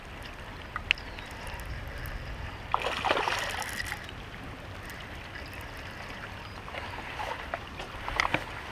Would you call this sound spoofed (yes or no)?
no